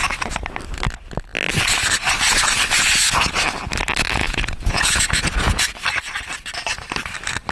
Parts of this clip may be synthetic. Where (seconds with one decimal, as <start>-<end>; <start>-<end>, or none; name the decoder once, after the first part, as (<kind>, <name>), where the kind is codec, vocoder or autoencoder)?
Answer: 4.2-5.6 (vocoder, Vocos)